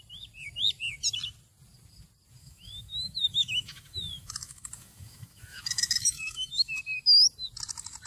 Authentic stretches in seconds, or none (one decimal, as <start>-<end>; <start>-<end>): 0.0-2.4; 6.8-8.1